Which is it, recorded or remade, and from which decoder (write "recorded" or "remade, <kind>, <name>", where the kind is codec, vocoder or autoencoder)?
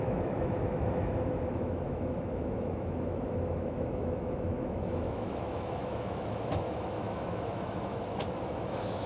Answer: remade, autoencoder, DAC-VAE